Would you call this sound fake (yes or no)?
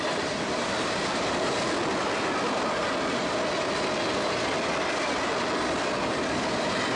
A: no